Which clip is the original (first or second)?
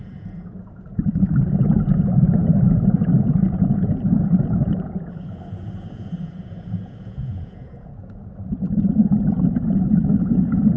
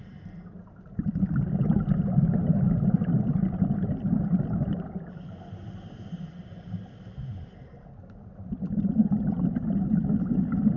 second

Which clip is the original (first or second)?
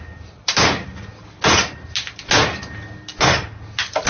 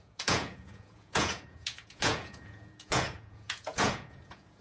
first